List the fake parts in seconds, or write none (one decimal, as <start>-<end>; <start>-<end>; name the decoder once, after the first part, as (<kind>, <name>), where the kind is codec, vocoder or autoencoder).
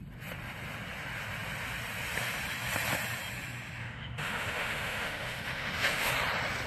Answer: 3.8-6.1 (autoencoder, DAC-VAE)